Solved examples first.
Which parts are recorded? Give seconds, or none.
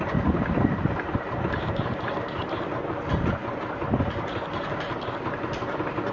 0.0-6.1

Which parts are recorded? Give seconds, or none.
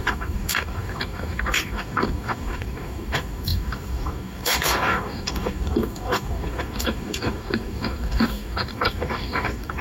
none